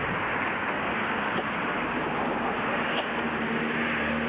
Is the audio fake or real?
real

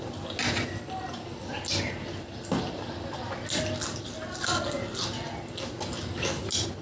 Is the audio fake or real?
real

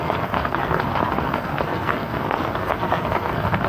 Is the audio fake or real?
fake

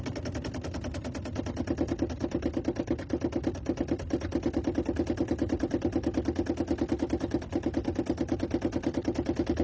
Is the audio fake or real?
real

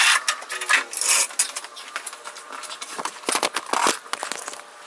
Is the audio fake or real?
real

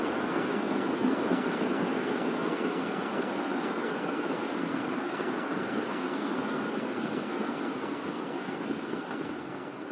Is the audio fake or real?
fake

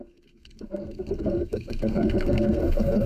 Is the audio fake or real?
fake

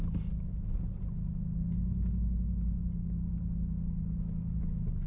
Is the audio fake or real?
real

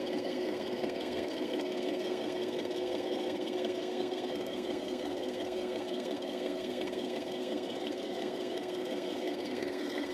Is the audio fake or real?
fake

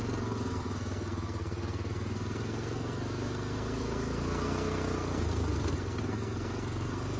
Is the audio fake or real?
fake